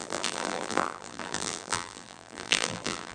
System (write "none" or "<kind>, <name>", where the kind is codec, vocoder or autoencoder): vocoder, BigVGAN v2